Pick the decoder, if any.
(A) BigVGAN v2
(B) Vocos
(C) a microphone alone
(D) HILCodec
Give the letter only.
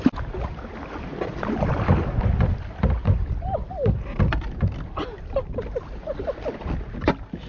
C